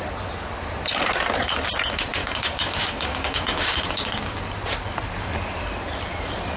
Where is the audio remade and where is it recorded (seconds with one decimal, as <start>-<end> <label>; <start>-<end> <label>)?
0.0-2.2 recorded; 2.2-4.4 remade; 4.4-6.6 recorded